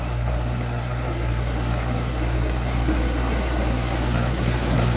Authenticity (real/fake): fake